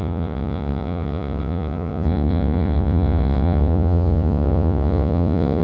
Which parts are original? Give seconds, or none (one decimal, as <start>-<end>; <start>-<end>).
none